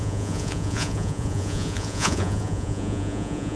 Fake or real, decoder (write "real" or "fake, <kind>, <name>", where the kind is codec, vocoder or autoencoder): fake, vocoder, Vocos